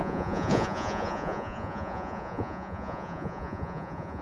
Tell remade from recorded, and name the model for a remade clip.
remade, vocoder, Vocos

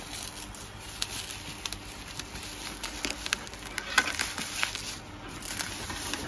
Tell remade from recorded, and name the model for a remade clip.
recorded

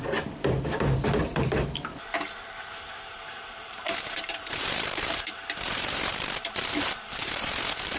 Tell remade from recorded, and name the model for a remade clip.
remade, vocoder, BigVGAN v2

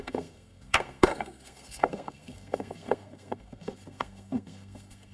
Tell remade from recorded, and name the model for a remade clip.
remade, codec, SNAC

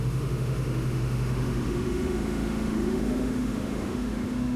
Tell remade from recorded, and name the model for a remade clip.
remade, autoencoder, DAC-VAE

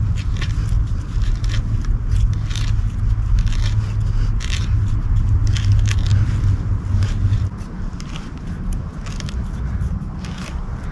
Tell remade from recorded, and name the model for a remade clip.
recorded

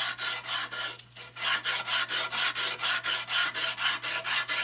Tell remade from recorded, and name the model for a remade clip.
recorded